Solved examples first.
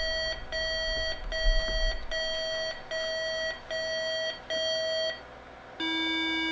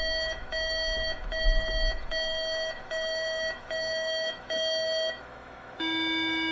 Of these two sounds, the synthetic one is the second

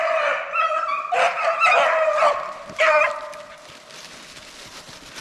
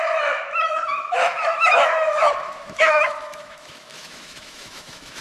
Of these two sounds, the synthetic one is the second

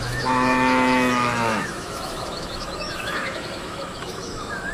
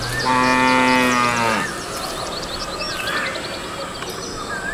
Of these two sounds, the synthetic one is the first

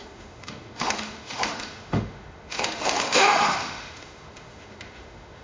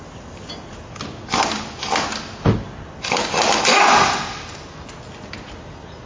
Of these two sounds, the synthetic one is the first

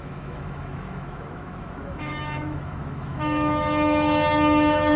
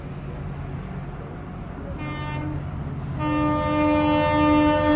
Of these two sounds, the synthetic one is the first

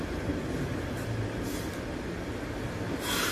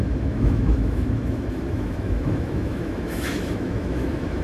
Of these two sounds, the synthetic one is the second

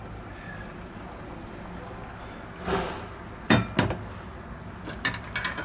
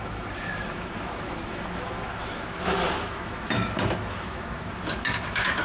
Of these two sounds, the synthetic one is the second